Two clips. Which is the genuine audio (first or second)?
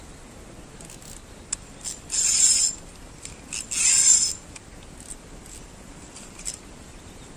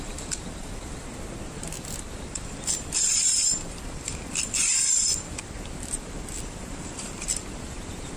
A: first